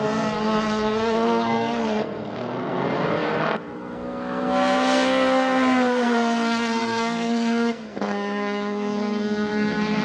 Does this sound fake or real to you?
fake